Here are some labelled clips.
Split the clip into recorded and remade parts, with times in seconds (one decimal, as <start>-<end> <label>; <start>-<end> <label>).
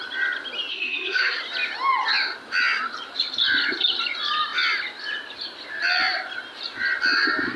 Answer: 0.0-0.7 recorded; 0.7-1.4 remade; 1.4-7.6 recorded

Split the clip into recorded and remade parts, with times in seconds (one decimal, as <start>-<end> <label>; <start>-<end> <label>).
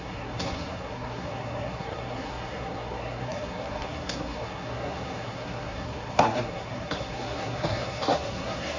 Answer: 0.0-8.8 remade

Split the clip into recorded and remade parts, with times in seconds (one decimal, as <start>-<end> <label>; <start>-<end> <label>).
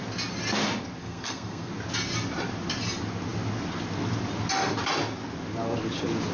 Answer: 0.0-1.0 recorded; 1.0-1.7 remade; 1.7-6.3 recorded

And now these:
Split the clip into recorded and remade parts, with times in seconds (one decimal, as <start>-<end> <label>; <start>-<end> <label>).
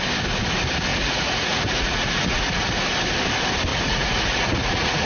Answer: 0.0-0.9 recorded; 0.9-2.7 remade; 2.7-3.7 recorded; 3.7-5.1 remade